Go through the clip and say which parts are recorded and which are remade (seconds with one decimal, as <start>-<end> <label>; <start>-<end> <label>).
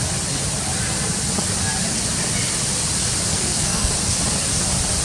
0.0-3.3 recorded; 3.3-3.9 remade; 3.9-5.0 recorded